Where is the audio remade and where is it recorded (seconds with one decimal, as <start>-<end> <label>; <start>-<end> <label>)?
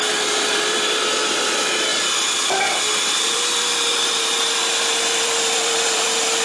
0.0-6.4 remade